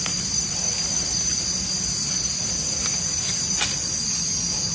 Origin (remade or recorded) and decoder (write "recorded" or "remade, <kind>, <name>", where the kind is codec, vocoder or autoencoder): recorded